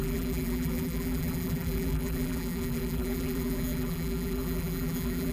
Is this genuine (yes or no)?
no